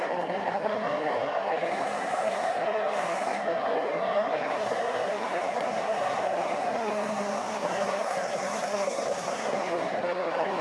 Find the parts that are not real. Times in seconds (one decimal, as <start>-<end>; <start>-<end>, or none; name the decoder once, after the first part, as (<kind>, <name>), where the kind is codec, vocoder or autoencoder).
0.0-10.6 (codec, SNAC)